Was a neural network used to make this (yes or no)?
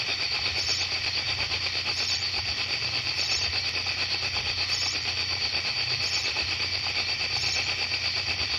yes